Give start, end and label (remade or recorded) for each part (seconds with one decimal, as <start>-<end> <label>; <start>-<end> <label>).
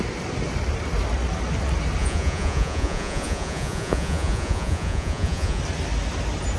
0.0-2.0 recorded; 2.0-5.6 remade; 5.6-6.6 recorded